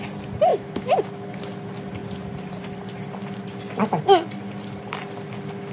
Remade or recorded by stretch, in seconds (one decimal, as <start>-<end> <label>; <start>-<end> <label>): 0.0-0.5 recorded; 0.5-1.4 remade; 1.4-5.7 recorded